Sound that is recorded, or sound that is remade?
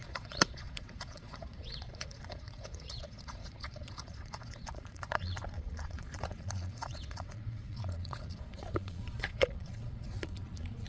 remade